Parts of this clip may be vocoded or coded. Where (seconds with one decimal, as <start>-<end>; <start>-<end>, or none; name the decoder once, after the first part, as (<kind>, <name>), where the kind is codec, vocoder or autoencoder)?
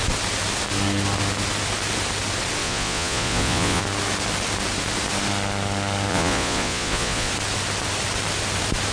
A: 2.6-3.8 (vocoder, Vocos); 6.1-7.3